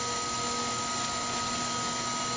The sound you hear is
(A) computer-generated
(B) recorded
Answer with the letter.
B